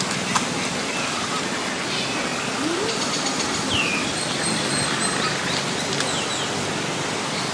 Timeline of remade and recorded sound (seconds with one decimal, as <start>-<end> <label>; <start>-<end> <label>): 0.0-7.5 recorded

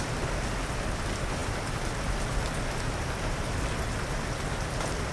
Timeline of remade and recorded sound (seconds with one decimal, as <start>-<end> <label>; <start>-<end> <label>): 0.0-5.1 recorded

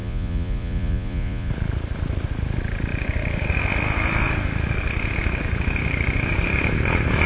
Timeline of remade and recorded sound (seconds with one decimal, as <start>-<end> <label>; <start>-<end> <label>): 0.0-1.5 remade; 1.5-7.3 recorded

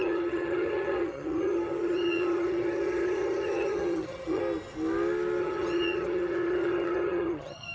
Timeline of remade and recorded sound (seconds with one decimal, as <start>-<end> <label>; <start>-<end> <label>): 0.0-4.4 remade; 4.4-5.4 recorded; 5.4-7.7 remade

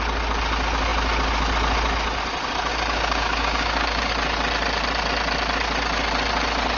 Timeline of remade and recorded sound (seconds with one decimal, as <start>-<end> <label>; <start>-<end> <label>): 0.0-2.7 recorded; 2.7-4.1 remade; 4.1-6.8 recorded

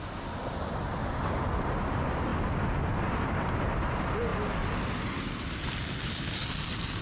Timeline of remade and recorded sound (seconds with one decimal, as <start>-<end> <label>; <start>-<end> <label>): 0.0-7.0 recorded

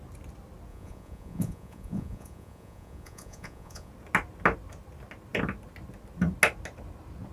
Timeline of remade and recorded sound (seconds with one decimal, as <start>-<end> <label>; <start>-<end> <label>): 0.0-0.7 recorded; 0.7-3.9 remade; 3.9-7.3 recorded